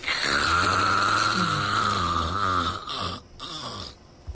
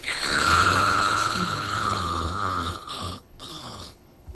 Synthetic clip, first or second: second